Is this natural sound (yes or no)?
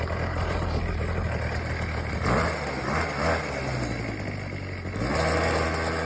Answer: yes